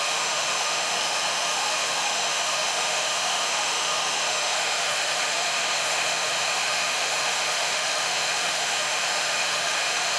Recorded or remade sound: remade